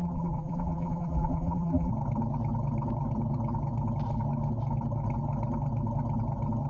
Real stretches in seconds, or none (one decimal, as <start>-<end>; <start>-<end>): 1.9-6.7